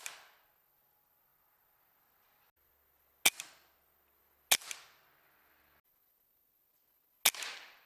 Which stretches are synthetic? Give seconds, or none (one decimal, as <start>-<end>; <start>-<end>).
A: none